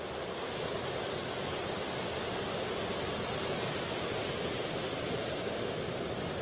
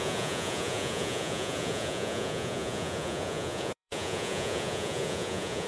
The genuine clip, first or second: first